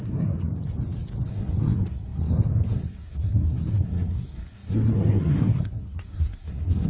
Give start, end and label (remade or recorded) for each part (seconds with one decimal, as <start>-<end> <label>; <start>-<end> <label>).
0.0-0.5 remade; 0.5-1.3 recorded; 1.3-6.9 remade